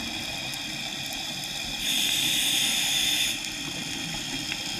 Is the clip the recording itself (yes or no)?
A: yes